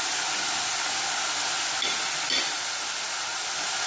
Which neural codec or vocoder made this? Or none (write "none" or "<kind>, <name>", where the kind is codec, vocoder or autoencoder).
none